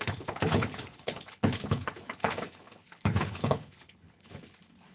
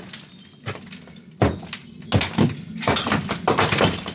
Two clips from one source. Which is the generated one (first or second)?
first